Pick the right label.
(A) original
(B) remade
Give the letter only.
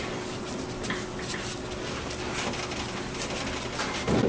A